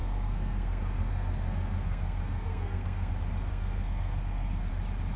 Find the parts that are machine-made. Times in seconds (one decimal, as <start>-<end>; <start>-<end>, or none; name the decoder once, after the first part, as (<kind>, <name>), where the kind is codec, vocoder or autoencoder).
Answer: 0.0-3.1 (codec, SNAC); 3.5-4.7